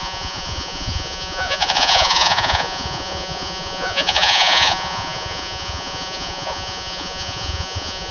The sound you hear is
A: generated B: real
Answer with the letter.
A